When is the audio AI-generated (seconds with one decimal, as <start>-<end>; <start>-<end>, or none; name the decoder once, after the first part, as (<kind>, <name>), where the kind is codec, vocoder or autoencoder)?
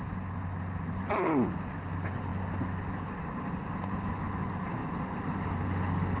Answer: none